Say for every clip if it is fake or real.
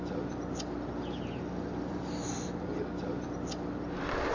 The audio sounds real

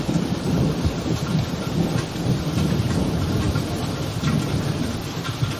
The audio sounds real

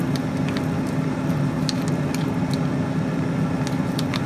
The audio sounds real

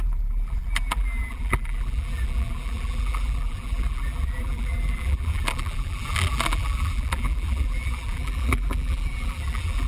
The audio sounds fake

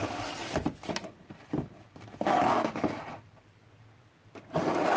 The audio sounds real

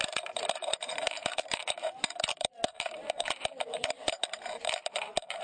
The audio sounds fake